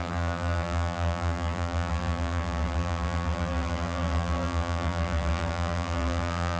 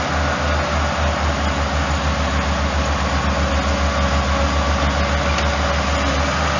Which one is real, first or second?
second